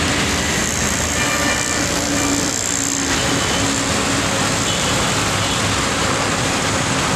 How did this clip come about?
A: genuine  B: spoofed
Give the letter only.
A